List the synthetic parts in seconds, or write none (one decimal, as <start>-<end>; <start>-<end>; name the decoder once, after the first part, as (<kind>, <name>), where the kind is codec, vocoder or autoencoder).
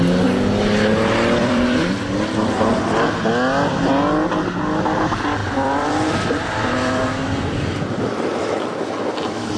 1.4-2.1 (vocoder, BigVGAN v2); 5.4-6.5